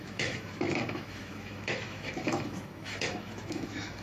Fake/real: fake